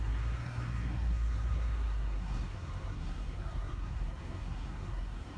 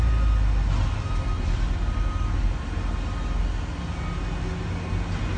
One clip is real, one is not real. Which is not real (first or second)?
first